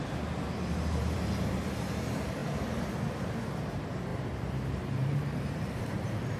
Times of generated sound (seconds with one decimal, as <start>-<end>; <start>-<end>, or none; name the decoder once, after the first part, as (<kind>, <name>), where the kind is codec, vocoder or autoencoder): 0.0-6.4 (vocoder, BigVGAN v2)